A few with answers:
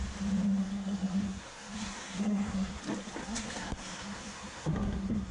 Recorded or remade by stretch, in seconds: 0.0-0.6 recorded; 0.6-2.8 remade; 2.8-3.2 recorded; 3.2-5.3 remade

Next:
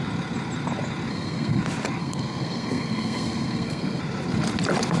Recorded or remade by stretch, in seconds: 0.0-1.1 recorded; 1.1-1.6 remade; 1.6-2.0 recorded; 2.0-4.0 remade; 4.0-5.0 recorded